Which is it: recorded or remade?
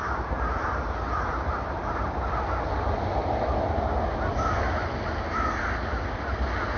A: recorded